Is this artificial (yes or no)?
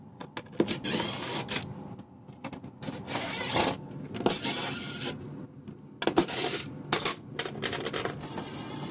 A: no